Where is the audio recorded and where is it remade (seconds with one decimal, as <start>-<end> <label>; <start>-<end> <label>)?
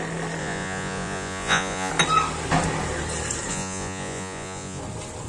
0.0-0.4 recorded; 0.4-1.9 remade; 1.9-3.5 recorded; 3.5-4.8 remade; 4.8-5.3 recorded